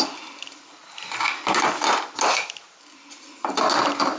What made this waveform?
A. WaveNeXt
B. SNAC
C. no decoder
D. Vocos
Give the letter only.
C